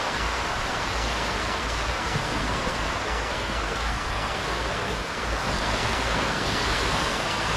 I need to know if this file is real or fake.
fake